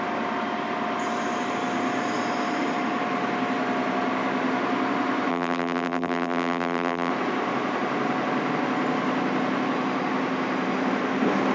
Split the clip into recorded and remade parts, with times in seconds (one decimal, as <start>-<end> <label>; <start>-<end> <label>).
0.0-5.3 recorded; 5.3-7.1 remade; 7.1-11.5 recorded